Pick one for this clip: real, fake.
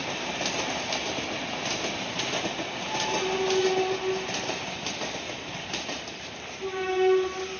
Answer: real